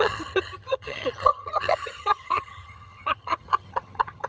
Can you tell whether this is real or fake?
fake